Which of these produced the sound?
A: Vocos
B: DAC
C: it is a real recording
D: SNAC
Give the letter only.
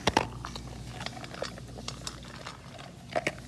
C